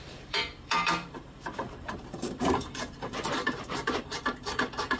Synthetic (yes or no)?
yes